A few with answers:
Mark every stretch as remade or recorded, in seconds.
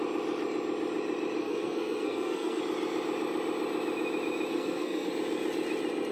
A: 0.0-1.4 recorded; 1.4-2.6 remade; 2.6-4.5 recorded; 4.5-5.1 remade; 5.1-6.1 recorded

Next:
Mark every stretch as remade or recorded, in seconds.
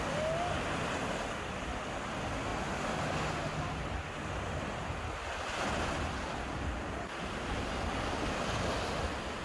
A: 0.0-9.4 recorded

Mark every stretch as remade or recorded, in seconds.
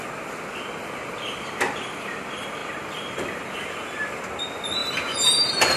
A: 0.0-2.6 recorded; 2.6-4.1 remade; 4.1-5.8 recorded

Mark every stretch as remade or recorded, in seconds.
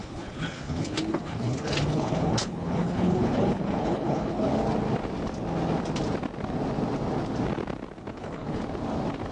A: 0.0-4.5 remade; 4.5-8.1 recorded; 8.1-8.6 remade; 8.6-9.3 recorded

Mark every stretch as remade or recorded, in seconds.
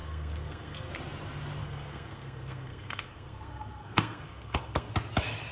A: 0.0-0.9 remade; 0.9-1.6 recorded; 1.6-4.9 remade; 4.9-5.5 recorded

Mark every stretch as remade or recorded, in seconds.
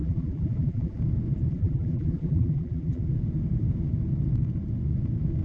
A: 0.0-1.0 remade; 1.0-1.5 recorded; 1.5-3.0 remade; 3.0-5.4 recorded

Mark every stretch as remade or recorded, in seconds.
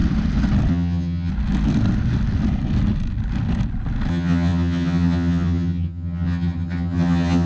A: 0.0-0.7 recorded; 0.7-1.3 remade; 1.3-4.1 recorded; 4.1-7.5 remade